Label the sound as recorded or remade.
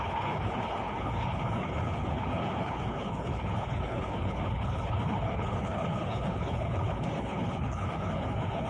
remade